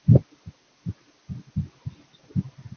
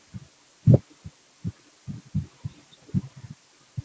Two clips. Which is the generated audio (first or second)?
second